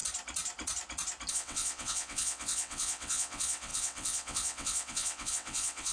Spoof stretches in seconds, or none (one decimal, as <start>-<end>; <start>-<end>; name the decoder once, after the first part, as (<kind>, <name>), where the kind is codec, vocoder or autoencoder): 1.3-5.9 (vocoder, WaveNeXt)